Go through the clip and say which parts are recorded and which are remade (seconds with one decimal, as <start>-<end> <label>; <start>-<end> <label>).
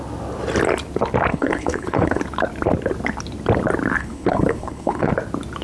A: 0.0-1.3 recorded; 1.3-2.2 remade; 2.2-4.0 recorded; 4.0-5.1 remade; 5.1-5.6 recorded